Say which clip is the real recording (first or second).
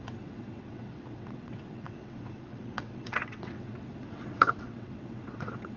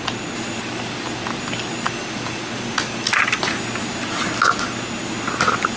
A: second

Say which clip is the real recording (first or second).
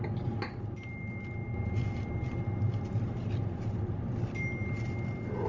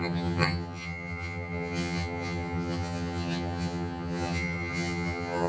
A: first